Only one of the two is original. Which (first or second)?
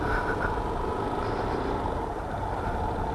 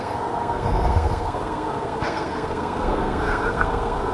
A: first